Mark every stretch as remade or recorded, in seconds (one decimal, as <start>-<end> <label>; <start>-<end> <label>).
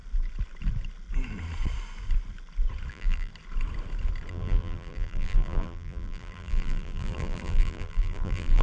0.0-2.9 recorded; 2.9-3.3 remade; 3.3-4.3 recorded; 4.3-8.6 remade